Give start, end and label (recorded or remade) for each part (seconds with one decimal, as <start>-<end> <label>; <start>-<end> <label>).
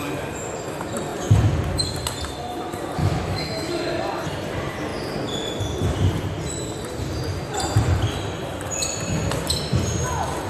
0.0-3.0 recorded; 3.0-3.7 remade; 3.7-10.5 recorded